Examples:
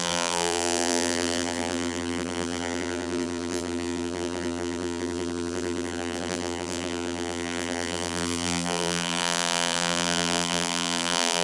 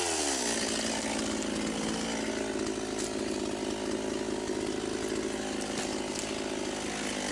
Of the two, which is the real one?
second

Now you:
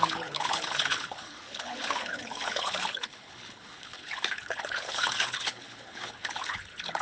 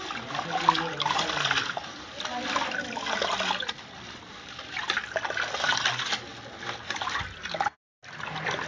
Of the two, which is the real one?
second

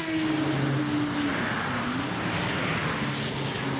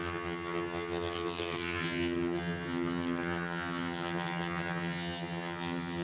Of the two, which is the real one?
first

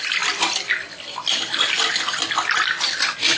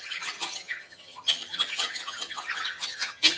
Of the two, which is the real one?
first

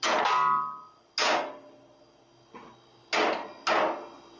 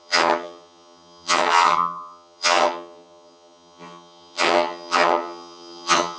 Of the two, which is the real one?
first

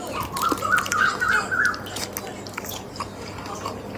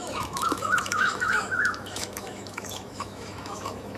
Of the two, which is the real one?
first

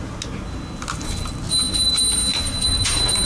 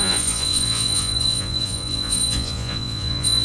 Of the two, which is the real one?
first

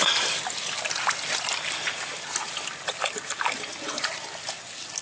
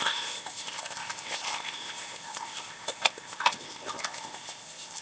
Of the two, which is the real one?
first